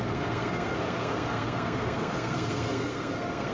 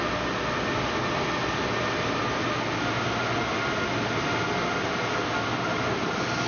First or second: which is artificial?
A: first